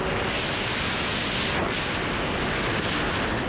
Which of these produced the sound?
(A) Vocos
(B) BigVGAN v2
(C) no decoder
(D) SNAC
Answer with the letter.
C